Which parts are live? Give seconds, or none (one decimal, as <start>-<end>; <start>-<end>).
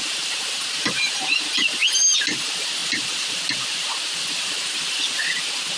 0.0-5.8